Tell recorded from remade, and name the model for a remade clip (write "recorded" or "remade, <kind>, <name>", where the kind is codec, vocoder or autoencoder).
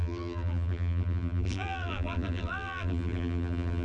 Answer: remade, vocoder, BigVGAN v2